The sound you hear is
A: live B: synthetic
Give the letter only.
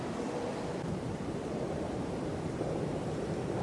B